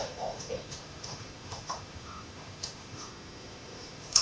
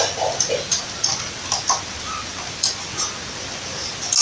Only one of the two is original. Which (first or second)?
second